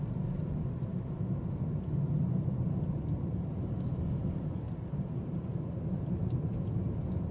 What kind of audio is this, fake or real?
real